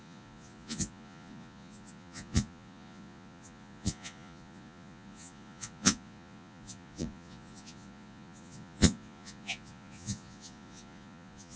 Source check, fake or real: fake